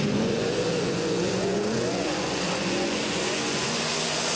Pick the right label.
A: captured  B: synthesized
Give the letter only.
B